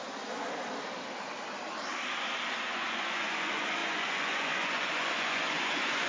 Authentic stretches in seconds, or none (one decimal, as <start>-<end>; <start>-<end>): 0.0-2.6